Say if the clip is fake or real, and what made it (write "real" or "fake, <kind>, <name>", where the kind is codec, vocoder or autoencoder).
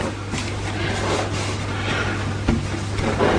real